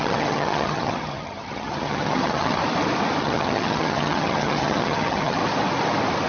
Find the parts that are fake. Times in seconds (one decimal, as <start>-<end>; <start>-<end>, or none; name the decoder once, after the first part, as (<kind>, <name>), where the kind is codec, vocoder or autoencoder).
0.0-2.6 (vocoder, HiFi-GAN); 3.2-5.4